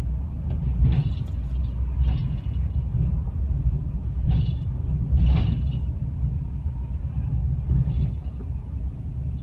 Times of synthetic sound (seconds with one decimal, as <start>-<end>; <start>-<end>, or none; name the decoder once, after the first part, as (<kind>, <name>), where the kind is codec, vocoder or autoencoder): 1.0-1.6 (vocoder, Vocos); 2.2-4.7